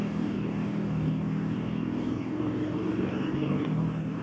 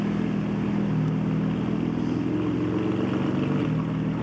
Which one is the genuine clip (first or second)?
second